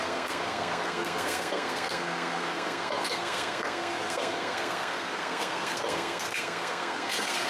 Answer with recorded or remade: remade